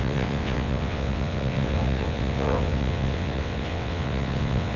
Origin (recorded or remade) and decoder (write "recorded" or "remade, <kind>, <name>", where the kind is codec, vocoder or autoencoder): remade, vocoder, WaveNeXt